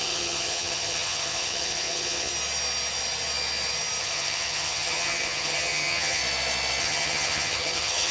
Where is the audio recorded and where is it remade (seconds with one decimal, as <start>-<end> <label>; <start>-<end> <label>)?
0.0-2.3 remade; 2.3-4.0 recorded; 4.0-6.2 remade; 6.2-6.8 recorded; 6.8-8.1 remade